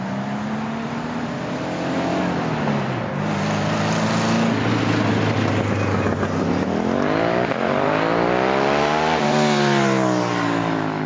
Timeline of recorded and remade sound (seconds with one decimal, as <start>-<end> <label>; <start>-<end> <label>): 0.0-11.1 recorded